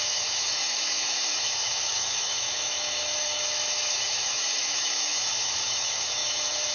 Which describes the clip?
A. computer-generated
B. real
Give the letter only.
A